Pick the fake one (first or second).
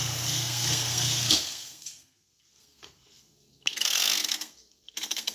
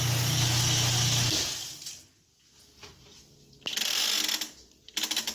first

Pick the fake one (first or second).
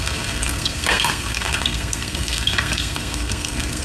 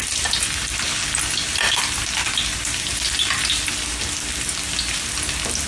first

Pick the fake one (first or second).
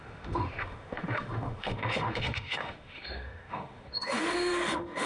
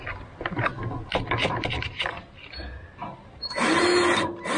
first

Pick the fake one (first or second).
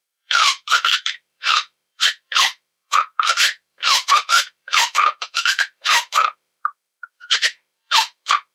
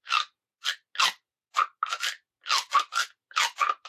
first